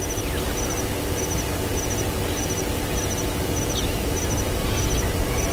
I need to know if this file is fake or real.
real